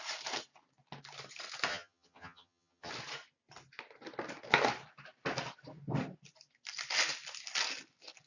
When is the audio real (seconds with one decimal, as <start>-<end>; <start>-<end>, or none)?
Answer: 0.0-1.7; 2.9-8.3